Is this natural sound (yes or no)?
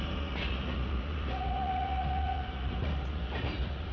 no